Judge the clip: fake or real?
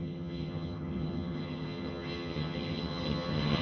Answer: fake